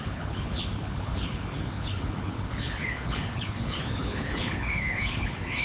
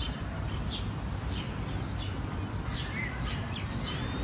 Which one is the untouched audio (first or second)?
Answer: second